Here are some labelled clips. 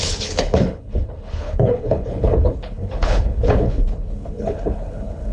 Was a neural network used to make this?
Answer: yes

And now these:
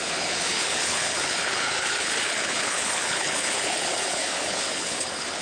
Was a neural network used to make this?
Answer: yes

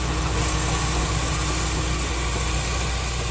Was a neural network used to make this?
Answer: no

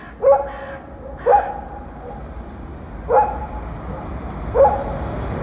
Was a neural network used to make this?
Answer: no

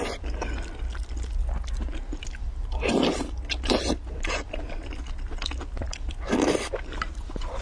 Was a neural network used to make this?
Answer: no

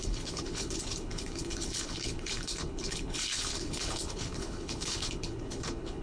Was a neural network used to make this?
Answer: yes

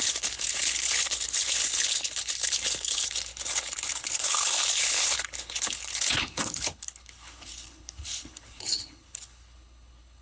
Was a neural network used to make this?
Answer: yes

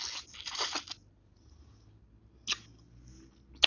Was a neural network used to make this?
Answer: no